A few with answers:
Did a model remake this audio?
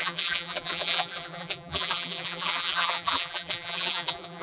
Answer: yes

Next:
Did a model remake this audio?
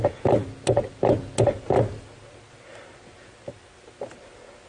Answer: no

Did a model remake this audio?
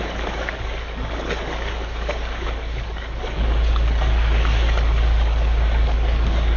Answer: yes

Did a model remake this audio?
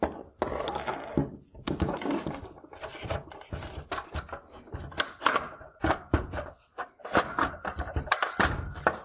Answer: no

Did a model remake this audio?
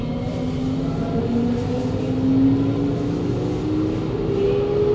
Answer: no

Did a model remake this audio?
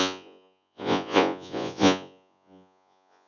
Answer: yes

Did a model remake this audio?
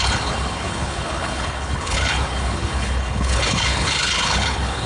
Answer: yes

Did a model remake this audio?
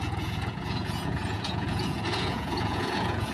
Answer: yes